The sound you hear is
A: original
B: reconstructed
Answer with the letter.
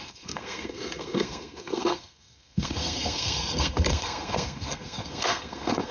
B